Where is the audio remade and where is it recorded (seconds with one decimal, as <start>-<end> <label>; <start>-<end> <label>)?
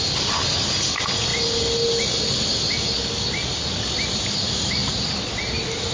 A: 0.0-5.9 recorded